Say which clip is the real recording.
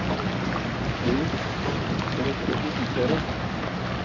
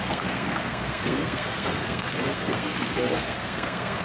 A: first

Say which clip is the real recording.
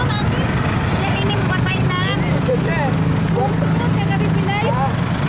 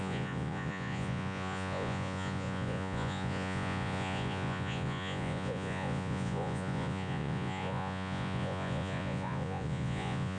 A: first